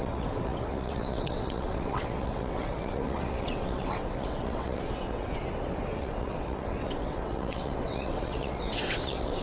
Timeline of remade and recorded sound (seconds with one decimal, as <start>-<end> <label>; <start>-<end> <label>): 0.0-5.4 remade; 5.4-6.0 recorded; 6.0-9.4 remade